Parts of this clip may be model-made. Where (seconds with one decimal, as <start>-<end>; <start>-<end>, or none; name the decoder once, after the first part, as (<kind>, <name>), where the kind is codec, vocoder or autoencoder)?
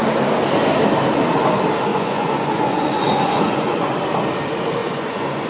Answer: 1.9-3.9 (vocoder, Vocos); 4.8-5.5